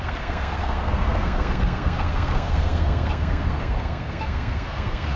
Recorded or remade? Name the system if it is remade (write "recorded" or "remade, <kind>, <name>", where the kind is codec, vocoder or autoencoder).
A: remade, codec, SNAC